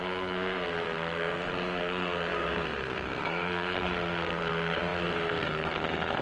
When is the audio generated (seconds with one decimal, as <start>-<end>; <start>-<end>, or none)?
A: 0.0-6.2